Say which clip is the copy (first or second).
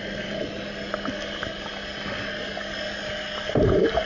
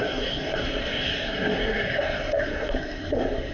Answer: second